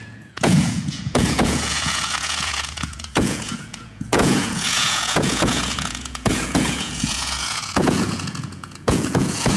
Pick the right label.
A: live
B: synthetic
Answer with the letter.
B